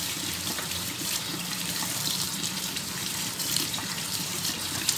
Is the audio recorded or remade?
remade